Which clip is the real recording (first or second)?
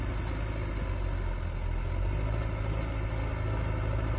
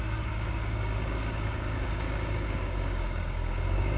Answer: first